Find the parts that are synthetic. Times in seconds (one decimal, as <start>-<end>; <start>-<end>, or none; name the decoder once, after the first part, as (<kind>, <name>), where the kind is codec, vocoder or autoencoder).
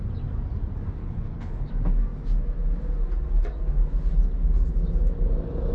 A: 1.0-1.7 (codec, HILCodec)